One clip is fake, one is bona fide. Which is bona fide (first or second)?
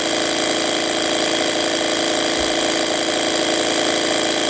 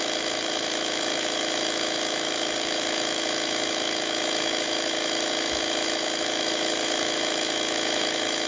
first